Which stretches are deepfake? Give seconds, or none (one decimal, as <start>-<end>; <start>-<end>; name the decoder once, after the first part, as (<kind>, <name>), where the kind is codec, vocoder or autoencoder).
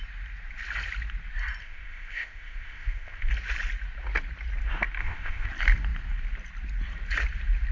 1.6-3.3 (codec, ZipCodec); 5.0-5.5